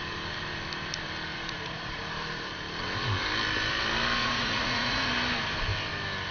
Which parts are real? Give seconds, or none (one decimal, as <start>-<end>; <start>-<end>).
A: 0.0-1.3; 2.0-4.2; 5.1-6.3